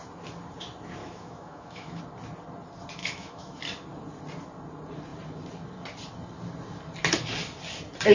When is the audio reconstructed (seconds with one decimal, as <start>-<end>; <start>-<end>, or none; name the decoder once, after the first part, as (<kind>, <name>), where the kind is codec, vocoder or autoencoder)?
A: 1.0-2.0 (autoencoder, DAC-VAE); 3.0-3.6